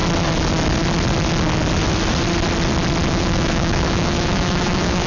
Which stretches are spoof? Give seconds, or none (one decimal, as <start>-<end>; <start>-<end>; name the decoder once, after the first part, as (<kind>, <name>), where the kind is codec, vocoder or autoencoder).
3.1-5.1 (autoencoder, DAC-VAE)

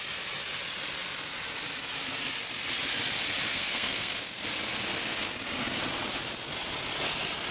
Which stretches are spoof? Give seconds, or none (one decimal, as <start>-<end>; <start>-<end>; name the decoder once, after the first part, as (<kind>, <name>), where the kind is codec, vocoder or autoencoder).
3.5-4.4 (codec, SNAC)

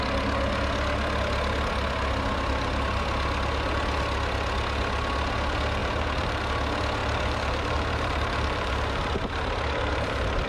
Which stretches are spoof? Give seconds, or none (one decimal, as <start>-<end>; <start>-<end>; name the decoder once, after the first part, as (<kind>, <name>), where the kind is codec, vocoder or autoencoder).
5.8-6.4 (vocoder, BigVGAN v2); 7.0-10.5

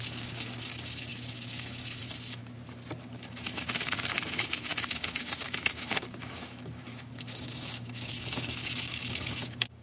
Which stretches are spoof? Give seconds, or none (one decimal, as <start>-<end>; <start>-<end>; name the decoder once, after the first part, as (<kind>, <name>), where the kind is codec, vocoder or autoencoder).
0.0-2.4 (codec, DAC); 3.0-9.8

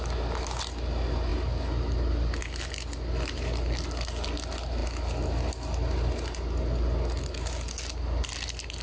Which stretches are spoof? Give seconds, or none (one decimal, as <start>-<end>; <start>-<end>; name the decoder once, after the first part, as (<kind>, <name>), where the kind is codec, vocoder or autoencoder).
none